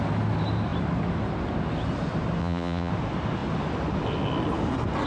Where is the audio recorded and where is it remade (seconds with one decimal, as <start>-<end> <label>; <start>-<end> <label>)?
0.0-2.4 recorded; 2.4-2.9 remade; 2.9-5.1 recorded